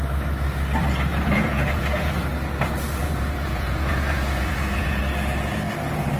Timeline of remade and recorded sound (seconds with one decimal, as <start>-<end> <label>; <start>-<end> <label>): 0.0-1.1 recorded; 1.1-2.1 remade; 2.1-3.0 recorded; 3.0-5.0 remade; 5.0-6.2 recorded